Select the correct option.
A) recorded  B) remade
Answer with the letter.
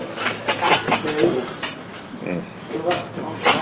B